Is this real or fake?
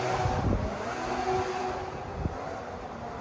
real